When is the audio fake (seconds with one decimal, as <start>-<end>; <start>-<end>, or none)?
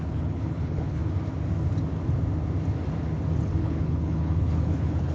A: 0.0-1.0; 3.6-5.1